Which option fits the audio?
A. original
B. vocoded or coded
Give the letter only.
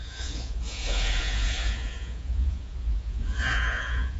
B